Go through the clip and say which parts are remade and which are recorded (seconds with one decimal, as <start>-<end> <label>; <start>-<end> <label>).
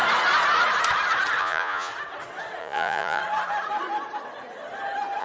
0.0-1.4 recorded; 1.4-1.9 remade; 1.9-2.6 recorded; 2.6-3.2 remade; 3.2-5.2 recorded